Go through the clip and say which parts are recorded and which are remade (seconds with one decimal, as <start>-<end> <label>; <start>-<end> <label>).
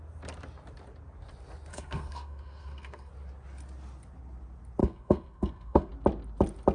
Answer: 0.0-1.7 recorded; 1.7-3.1 remade; 3.1-4.8 recorded; 4.8-5.9 remade; 5.9-6.7 recorded